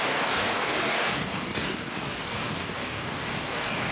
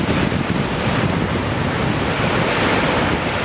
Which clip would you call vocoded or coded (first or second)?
first